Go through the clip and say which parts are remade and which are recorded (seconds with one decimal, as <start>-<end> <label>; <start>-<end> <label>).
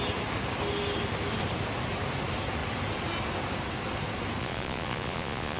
0.0-4.4 recorded; 4.4-5.6 remade